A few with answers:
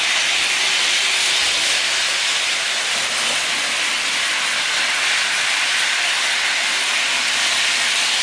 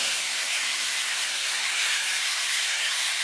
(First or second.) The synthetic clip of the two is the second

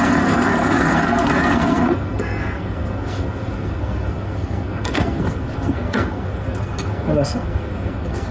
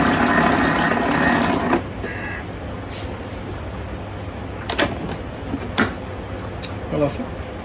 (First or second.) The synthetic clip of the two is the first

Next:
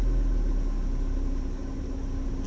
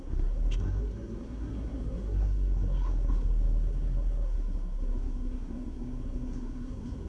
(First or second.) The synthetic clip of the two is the second